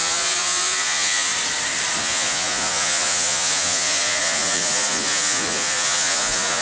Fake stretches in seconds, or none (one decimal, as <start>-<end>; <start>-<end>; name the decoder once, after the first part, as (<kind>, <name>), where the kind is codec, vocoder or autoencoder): 0.0-1.3 (vocoder, Vocos); 2.0-6.6